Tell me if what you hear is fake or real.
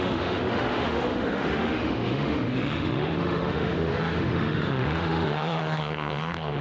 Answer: fake